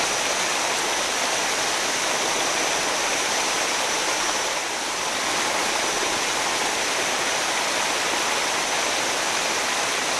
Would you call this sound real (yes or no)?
yes